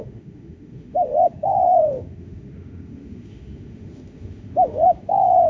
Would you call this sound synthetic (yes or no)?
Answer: yes